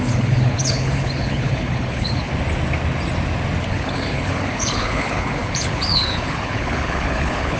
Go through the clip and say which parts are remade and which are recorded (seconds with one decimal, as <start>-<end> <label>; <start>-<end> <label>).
0.0-2.3 remade; 2.3-3.6 recorded; 3.6-7.6 remade